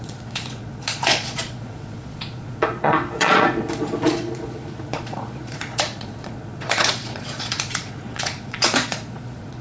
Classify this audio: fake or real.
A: fake